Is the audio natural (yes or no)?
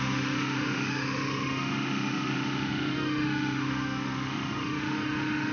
no